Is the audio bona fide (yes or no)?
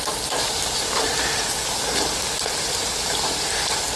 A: yes